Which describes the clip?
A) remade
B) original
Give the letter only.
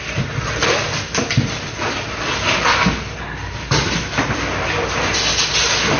B